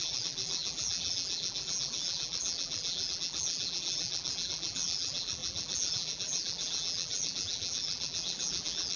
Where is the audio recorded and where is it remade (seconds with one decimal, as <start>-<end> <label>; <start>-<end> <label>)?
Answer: 0.0-9.0 remade